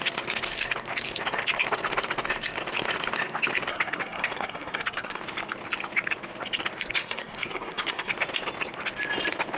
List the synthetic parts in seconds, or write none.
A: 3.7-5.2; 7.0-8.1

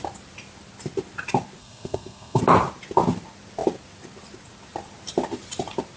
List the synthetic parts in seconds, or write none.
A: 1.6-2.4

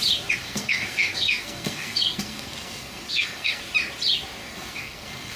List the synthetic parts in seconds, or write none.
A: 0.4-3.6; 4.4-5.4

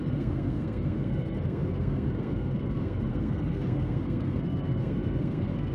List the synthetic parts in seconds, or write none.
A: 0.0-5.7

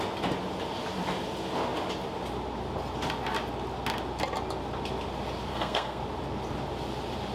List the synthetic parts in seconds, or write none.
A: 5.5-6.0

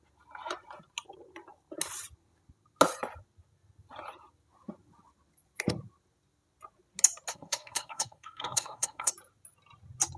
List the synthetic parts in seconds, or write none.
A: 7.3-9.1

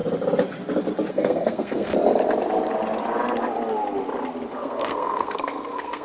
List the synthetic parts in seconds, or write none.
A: 1.1-1.9; 4.5-6.0